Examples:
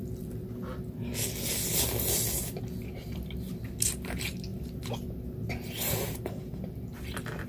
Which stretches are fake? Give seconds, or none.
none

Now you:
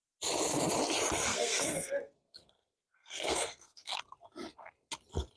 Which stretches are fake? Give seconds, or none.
1.3-4.0 (codec, SNAC)

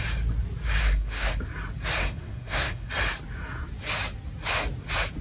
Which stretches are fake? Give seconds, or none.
0.8-1.3 (codec, SNAC); 2.0-2.9

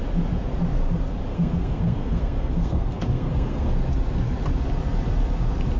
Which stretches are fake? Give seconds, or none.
1.3-3.8 (codec, SNAC)

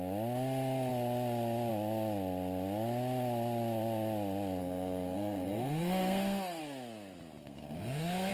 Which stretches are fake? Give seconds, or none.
4.6-6.6 (codec, SNAC); 7.4-8.3

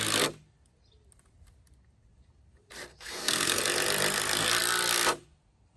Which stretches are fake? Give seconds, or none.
2.9-3.6 (codec, SNAC)

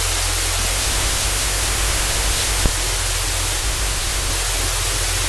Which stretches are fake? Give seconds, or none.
0.7-2.6 (codec, SNAC); 3.6-4.3